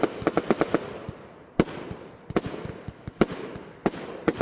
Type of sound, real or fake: real